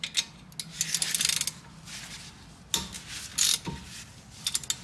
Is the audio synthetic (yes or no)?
no